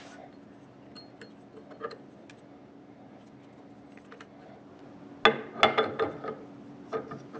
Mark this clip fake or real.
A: real